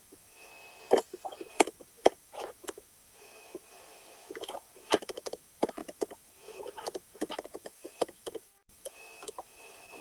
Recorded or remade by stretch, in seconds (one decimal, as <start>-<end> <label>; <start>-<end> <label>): 0.0-0.5 remade; 0.5-1.5 recorded; 1.5-10.0 remade